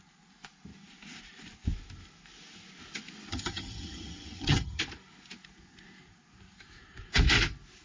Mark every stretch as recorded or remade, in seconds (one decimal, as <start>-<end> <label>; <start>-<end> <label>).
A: 0.0-3.3 recorded; 3.3-4.8 remade; 4.8-7.8 recorded